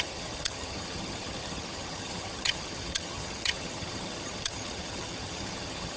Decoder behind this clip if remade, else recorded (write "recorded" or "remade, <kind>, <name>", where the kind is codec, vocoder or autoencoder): remade, vocoder, HiFi-GAN